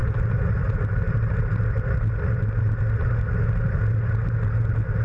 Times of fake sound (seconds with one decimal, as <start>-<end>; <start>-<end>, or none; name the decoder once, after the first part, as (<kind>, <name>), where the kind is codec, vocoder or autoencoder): 0.0-1.6 (vocoder, BigVGAN v2)